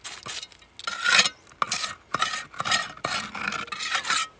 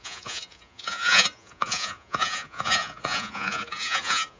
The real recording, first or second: first